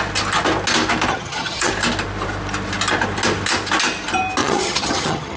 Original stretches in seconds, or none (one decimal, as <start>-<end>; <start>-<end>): 0.0-1.1; 1.7-4.4